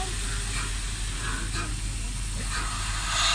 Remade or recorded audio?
recorded